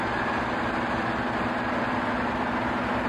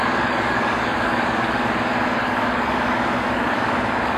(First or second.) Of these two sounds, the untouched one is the first